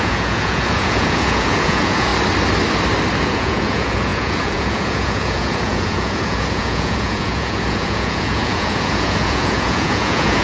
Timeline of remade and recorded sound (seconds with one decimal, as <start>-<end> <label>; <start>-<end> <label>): 0.0-2.1 remade; 2.1-3.2 recorded; 3.2-10.4 remade

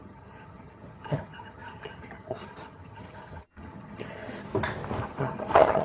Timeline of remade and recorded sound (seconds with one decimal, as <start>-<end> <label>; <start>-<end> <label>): 0.0-4.5 remade; 4.5-5.2 recorded; 5.2-5.8 remade

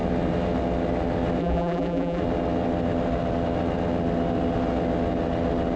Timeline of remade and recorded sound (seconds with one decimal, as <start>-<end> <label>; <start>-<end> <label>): 0.0-1.4 recorded; 1.4-2.2 remade; 2.2-5.8 recorded

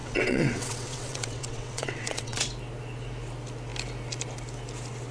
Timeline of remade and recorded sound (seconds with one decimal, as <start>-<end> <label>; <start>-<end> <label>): 0.0-2.4 remade; 2.4-5.1 recorded

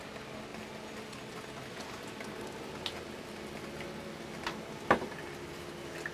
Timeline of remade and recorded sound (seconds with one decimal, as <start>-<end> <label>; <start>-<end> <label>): 0.0-6.1 recorded